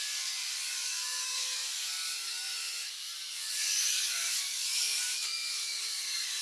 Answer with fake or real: fake